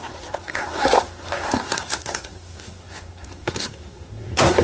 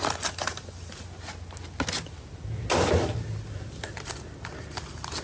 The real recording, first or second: second